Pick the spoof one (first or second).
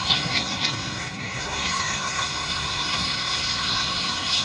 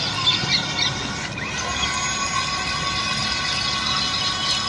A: first